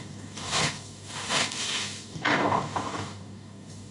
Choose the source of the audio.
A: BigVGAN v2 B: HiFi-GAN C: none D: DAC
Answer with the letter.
D